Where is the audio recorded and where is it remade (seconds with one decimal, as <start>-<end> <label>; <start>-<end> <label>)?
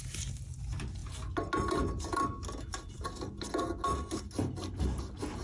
0.0-5.4 recorded